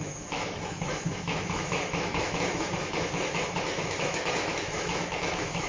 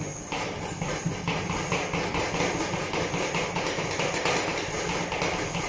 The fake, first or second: first